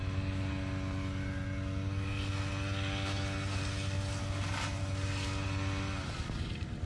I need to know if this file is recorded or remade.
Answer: recorded